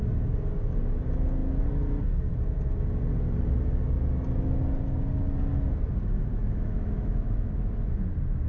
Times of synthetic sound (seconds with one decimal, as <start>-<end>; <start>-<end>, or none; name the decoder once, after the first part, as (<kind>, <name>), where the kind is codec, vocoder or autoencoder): 6.4-7.7 (autoencoder, DAC-VAE)